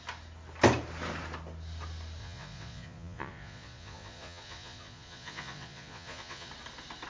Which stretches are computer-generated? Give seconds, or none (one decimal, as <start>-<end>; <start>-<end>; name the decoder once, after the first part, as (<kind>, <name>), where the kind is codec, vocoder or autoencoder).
2.2-6.5 (vocoder, Vocos)